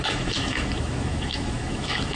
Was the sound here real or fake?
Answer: fake